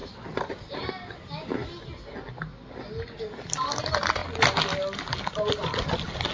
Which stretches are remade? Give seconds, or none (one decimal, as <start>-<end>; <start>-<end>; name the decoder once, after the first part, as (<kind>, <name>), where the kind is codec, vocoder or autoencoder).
0.0-0.9 (vocoder, BigVGAN v2)